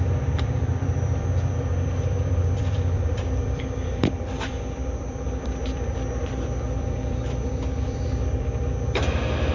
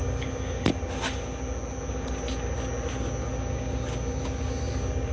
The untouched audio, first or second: second